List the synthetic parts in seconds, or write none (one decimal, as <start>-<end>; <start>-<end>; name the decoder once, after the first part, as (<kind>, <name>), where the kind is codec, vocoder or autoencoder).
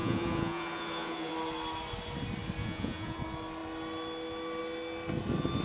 0.0-1.3 (vocoder, Vocos); 2.6-3.2